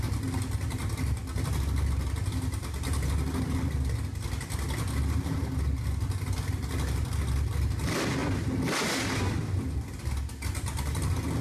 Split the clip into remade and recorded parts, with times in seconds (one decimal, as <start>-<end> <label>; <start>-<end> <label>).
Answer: 0.0-11.4 recorded